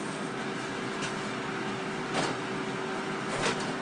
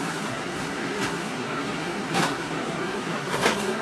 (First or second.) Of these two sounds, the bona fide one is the first